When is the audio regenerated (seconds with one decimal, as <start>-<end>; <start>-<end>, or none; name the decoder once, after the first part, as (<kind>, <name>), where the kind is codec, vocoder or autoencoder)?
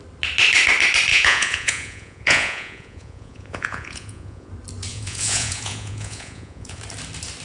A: 1.1-4.5 (vocoder, Vocos); 4.9-6.8